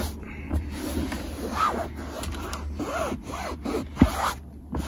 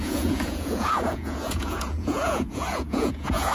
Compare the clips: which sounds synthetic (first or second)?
second